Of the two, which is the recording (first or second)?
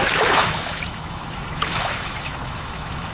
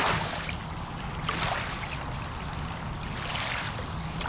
second